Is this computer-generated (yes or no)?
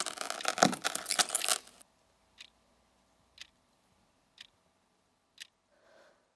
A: no